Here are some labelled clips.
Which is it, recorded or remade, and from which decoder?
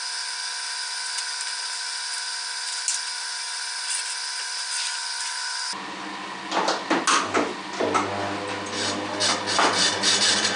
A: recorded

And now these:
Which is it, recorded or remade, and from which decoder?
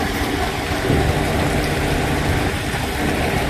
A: recorded